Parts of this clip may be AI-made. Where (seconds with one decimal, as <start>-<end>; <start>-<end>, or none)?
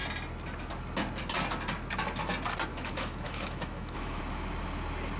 2.7-4.2